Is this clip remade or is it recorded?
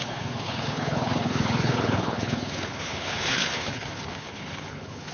remade